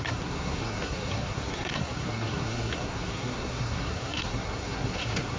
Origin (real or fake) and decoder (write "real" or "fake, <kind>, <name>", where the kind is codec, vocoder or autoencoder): fake, codec, SNAC